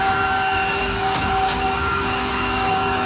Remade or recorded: remade